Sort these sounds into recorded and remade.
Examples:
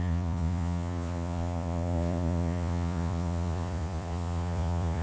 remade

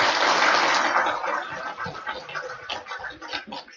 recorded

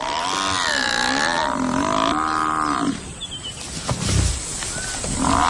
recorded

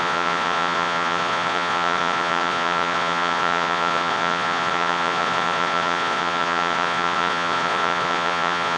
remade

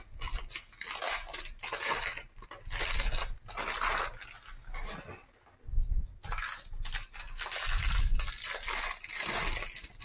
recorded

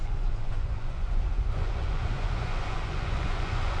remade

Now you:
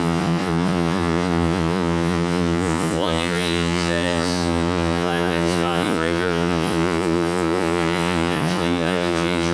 remade